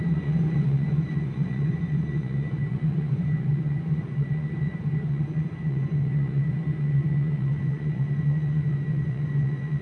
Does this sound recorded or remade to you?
remade